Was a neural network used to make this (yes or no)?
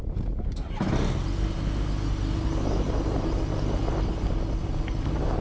no